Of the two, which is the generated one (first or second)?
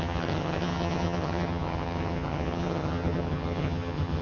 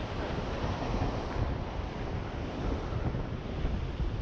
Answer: first